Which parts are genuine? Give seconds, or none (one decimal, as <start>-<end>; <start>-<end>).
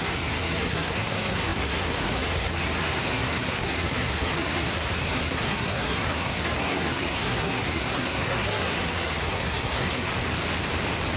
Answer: 10.1-11.2